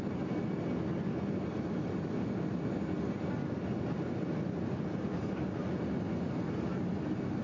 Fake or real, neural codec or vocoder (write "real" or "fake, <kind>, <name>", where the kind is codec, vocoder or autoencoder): real